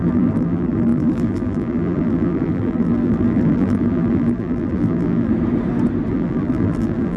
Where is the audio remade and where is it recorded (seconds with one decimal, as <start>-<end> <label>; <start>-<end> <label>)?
0.0-5.3 remade; 5.3-6.1 recorded; 6.1-7.2 remade